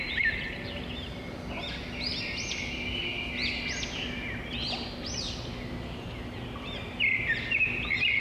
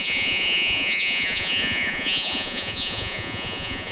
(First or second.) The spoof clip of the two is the second